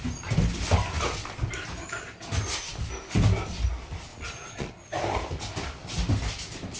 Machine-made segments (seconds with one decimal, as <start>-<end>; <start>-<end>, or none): 4.1-4.7